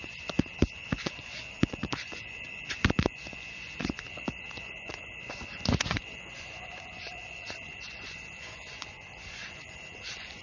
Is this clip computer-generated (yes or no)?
yes